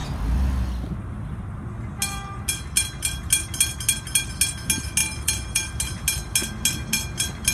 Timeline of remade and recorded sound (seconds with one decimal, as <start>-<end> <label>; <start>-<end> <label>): 0.0-5.0 recorded; 5.0-5.7 remade; 5.7-7.5 recorded

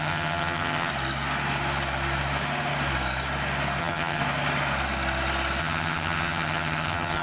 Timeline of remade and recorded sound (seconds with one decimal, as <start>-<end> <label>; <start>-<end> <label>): 0.0-0.9 remade; 0.9-3.8 recorded; 3.8-4.2 remade; 4.2-5.6 recorded; 5.6-7.2 remade